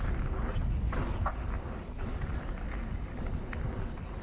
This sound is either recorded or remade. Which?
recorded